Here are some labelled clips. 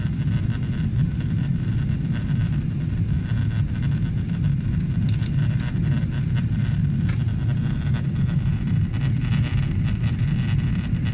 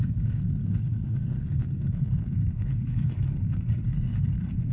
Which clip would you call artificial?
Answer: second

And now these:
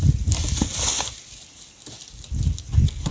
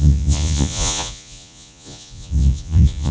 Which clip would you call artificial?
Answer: second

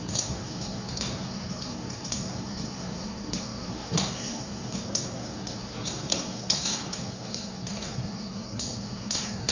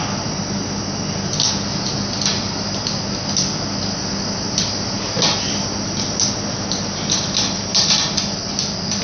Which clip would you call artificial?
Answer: first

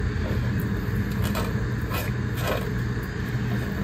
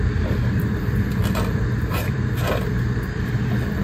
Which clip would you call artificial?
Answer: second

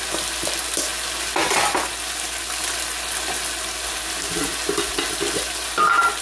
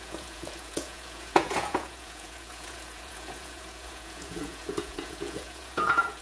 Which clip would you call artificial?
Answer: second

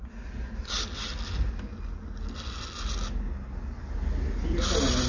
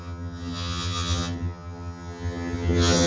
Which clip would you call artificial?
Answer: second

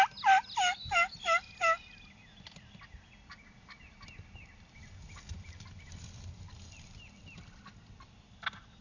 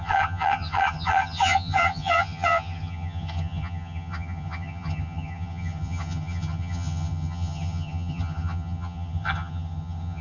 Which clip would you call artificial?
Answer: second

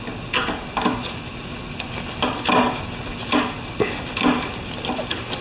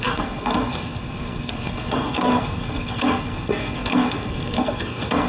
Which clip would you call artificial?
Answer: second